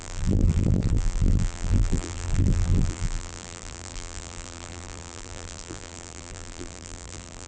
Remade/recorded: remade